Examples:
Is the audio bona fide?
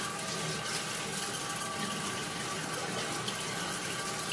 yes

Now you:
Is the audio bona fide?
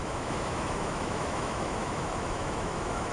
no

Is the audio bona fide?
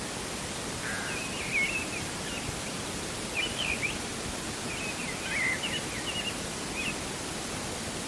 yes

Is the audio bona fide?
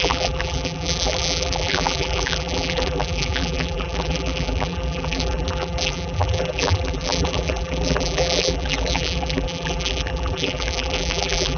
no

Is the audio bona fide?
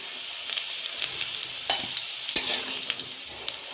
yes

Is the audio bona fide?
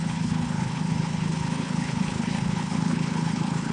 no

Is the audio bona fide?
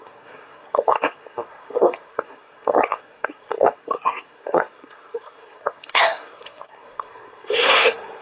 no